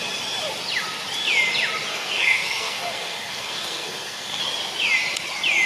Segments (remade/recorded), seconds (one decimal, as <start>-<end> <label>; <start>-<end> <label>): 0.0-1.9 recorded; 1.9-4.4 remade; 4.4-5.7 recorded